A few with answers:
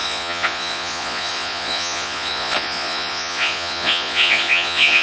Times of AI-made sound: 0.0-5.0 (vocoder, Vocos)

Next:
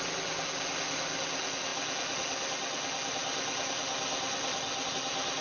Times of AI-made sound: none

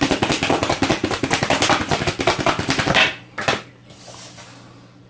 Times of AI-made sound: 0.0-5.1 (vocoder, BigVGAN v2)